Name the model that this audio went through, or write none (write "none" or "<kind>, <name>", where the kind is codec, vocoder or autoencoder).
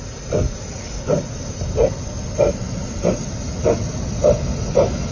none